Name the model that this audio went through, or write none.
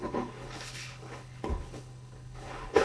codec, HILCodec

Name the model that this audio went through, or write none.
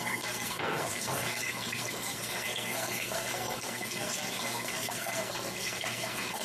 codec, SNAC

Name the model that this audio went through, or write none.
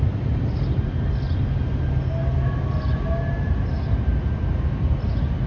none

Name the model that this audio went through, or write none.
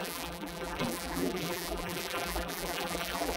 vocoder, BigVGAN v2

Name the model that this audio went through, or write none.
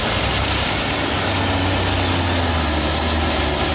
none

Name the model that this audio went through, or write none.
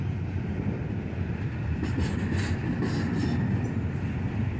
none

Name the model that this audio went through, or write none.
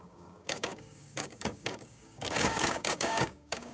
codec, DAC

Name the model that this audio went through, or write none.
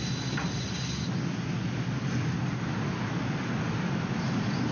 none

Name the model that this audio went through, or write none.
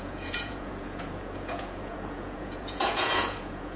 vocoder, Vocos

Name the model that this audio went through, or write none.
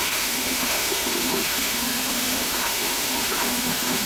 autoencoder, DAC-VAE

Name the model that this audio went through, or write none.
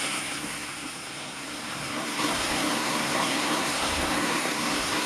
codec, SNAC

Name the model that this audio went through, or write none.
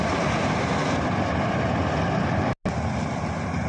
none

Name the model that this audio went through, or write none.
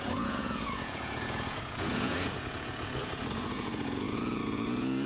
vocoder, Vocos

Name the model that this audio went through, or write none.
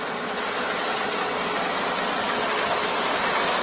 none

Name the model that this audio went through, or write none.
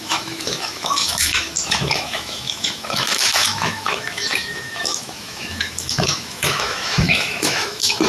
autoencoder, DAC-VAE